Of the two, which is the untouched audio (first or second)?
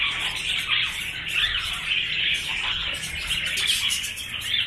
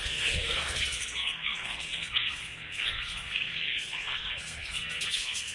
first